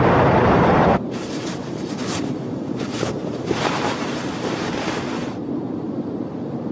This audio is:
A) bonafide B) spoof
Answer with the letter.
B